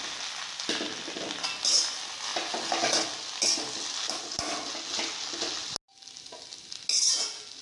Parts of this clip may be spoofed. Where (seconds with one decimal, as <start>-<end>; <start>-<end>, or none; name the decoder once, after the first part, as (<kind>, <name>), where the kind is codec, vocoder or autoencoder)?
none